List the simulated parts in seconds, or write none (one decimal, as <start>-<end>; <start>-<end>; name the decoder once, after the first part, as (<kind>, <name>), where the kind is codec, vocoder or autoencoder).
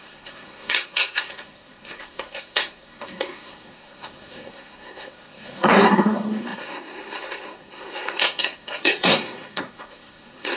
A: 0.0-10.6 (codec, SNAC)